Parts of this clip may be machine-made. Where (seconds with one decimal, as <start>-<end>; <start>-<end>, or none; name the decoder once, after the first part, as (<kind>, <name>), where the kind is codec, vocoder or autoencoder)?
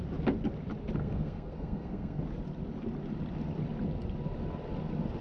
1.0-2.2 (codec, SNAC)